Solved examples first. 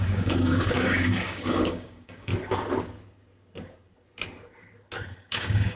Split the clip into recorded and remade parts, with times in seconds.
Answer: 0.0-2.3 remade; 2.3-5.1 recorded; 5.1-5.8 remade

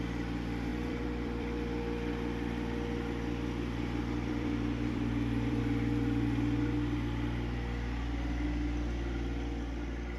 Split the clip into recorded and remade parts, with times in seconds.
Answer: 0.0-0.7 recorded; 0.7-5.6 remade; 5.6-10.2 recorded